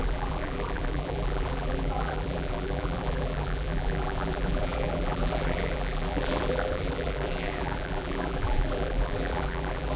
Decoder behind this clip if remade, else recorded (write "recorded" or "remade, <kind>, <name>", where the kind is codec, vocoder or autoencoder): remade, vocoder, BigVGAN v2